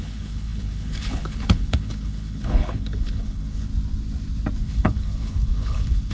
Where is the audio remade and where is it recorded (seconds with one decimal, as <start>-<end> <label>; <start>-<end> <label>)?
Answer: 0.0-3.7 remade; 3.7-4.6 recorded; 4.6-6.1 remade